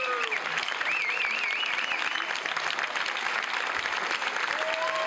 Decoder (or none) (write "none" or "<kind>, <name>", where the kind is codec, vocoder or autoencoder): none